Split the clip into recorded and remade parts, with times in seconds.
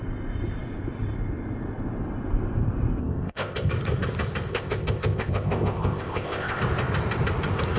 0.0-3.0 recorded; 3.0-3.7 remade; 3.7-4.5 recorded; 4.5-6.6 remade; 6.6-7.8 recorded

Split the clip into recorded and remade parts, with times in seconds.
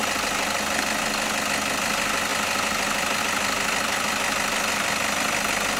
0.0-5.8 recorded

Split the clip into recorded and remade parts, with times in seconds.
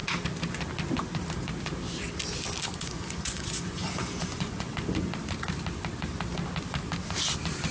0.0-2.9 recorded; 2.9-4.7 remade; 4.7-7.7 recorded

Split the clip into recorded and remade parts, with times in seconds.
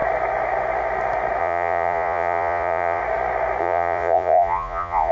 0.0-1.4 recorded; 1.4-3.0 remade; 3.0-3.6 recorded; 3.6-5.1 remade